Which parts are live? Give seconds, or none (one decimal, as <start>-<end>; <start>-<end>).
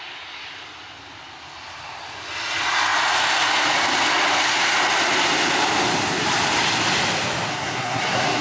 0.0-7.5